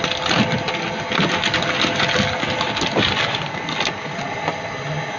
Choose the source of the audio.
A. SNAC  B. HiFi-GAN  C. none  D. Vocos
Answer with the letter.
C